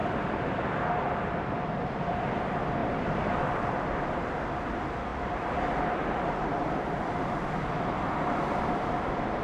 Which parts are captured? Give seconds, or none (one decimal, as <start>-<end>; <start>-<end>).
2.4-2.8; 3.9-5.1; 7.1-9.4